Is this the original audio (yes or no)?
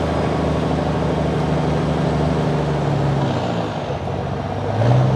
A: yes